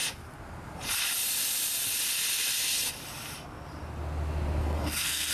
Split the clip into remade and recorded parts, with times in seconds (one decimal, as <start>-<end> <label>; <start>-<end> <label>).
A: 0.0-4.6 recorded; 4.6-5.3 remade